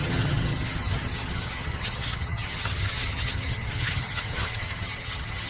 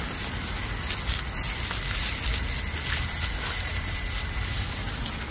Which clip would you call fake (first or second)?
first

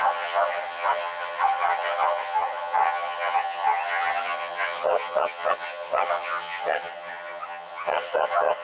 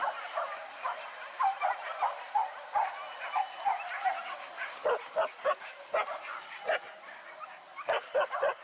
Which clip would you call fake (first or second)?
first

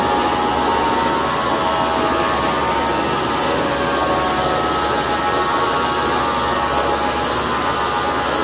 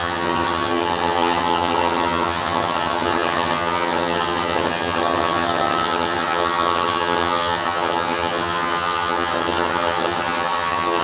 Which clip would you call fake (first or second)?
second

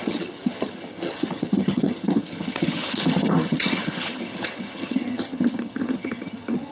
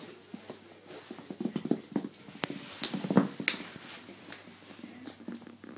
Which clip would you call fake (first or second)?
first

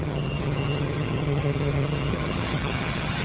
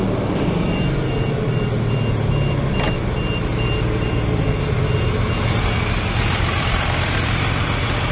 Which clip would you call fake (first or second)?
first